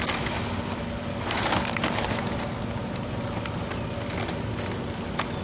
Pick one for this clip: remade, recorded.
recorded